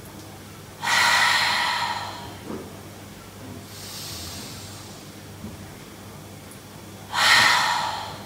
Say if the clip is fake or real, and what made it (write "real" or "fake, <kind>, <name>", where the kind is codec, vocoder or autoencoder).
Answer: real